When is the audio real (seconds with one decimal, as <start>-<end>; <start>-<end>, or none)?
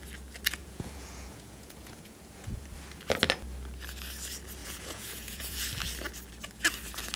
0.0-0.6; 2.6-4.6; 5.6-7.2